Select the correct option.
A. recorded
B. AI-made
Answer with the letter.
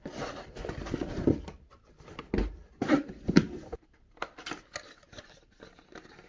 A